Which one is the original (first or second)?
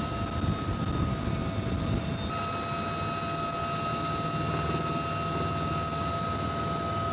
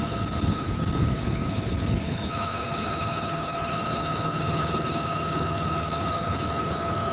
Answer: first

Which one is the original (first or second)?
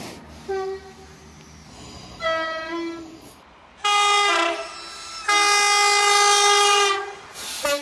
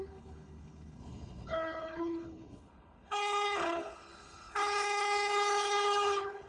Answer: first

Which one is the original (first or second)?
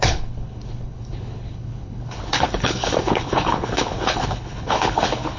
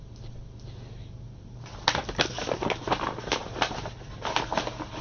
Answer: second